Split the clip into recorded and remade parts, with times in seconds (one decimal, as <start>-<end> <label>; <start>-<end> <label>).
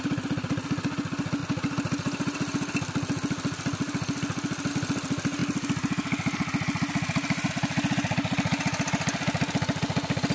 0.0-10.3 recorded